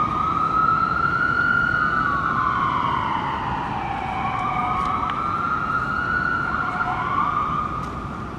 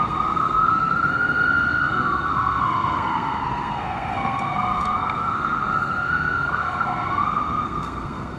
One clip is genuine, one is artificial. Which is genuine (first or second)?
first